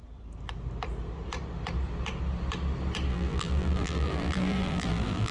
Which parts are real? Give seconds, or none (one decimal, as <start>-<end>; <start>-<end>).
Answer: 0.0-3.1